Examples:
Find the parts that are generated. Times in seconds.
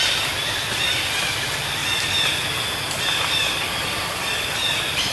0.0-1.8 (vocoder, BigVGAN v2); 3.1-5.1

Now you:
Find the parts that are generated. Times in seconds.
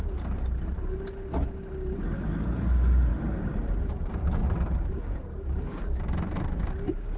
3.1-4.0 (vocoder, BigVGAN v2); 4.4-7.2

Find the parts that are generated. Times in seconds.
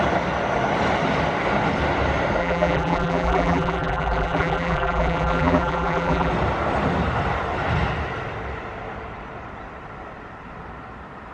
2.4-6.3 (vocoder, BigVGAN v2)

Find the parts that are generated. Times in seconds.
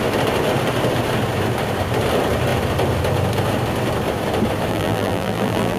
4.7-5.8 (vocoder, BigVGAN v2)